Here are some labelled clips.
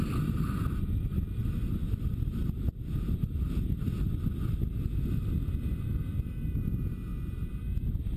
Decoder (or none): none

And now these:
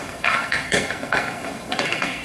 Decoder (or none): codec, SNAC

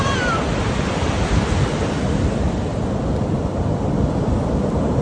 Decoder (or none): none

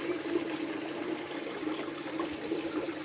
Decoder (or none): none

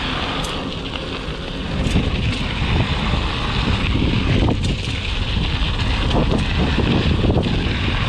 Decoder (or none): none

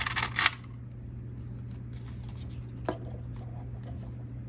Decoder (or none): none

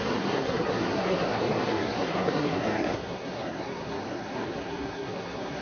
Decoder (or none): codec, SNAC